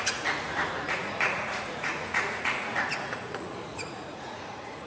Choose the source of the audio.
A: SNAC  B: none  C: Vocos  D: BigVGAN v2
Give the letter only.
C